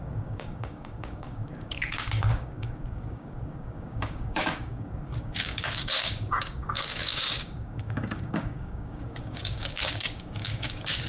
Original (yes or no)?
no